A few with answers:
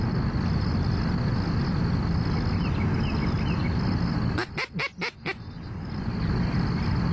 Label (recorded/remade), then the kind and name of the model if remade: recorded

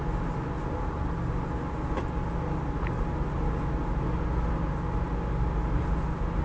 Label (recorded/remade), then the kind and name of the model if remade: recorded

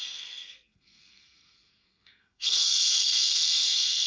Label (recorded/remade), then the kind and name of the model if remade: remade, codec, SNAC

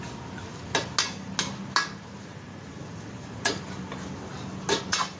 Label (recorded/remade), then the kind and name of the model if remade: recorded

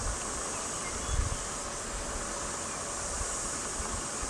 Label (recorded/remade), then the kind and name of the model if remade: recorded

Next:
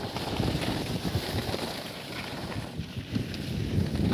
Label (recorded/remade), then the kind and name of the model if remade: recorded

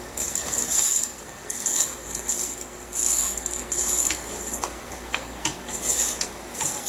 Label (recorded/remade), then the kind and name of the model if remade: remade, codec, SNAC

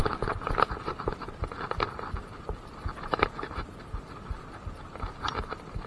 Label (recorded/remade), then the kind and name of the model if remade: recorded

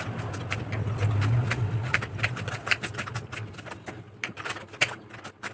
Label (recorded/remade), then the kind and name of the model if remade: recorded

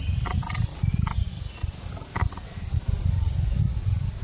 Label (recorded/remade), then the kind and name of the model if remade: recorded